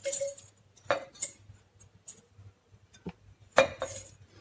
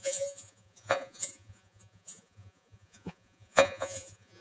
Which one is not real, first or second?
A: second